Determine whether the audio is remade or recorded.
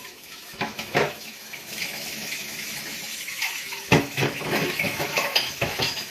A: remade